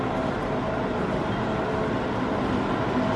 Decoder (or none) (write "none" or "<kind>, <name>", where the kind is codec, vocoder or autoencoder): none